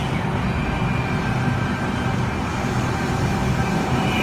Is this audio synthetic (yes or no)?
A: no